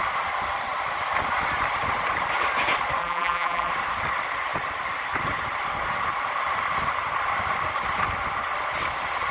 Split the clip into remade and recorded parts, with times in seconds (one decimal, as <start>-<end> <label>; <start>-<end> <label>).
0.0-3.0 recorded; 3.0-3.7 remade; 3.7-9.3 recorded